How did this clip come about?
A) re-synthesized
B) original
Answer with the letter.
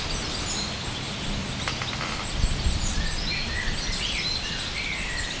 B